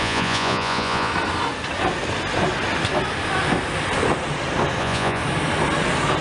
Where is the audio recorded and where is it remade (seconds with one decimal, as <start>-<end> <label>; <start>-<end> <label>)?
0.0-1.1 remade; 1.1-4.8 recorded; 4.8-5.2 remade; 5.2-6.2 recorded